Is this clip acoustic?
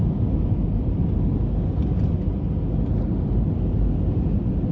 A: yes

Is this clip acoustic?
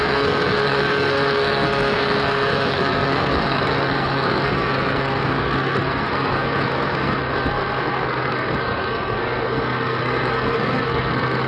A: no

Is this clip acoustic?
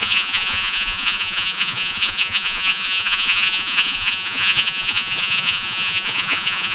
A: no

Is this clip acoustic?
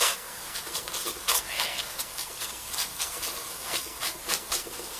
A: no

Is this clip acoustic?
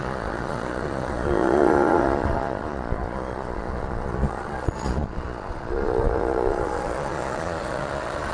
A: no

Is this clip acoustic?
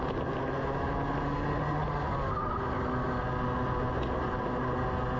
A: yes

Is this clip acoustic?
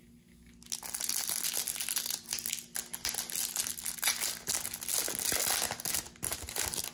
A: yes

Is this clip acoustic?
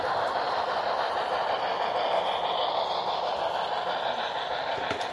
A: yes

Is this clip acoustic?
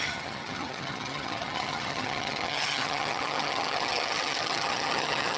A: no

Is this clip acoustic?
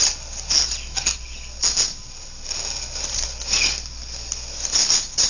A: yes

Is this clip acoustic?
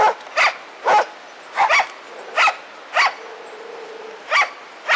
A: yes